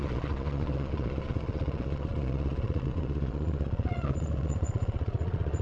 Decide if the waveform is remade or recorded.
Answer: remade